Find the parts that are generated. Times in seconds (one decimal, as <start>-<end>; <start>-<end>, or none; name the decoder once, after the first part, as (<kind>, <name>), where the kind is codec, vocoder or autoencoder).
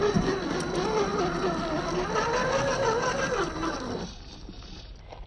none